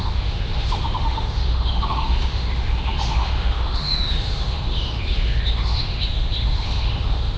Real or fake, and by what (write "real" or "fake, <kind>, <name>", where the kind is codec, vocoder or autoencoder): fake, autoencoder, DAC-VAE